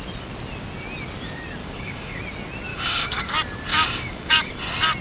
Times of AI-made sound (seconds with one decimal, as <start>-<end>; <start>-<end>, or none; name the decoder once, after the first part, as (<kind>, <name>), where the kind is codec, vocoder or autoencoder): 1.6-2.2 (codec, DAC); 2.7-3.3; 3.7-4.5